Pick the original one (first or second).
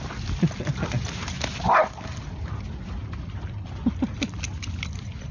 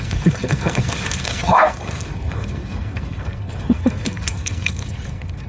first